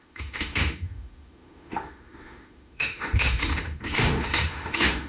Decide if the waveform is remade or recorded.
remade